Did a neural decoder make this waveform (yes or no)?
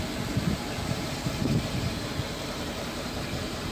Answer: yes